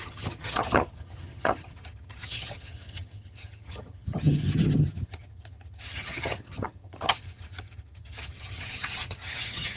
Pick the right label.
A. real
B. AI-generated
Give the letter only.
B